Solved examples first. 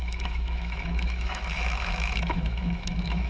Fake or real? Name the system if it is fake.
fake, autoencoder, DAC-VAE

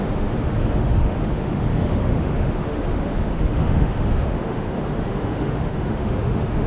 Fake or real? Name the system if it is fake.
fake, autoencoder, DAC-VAE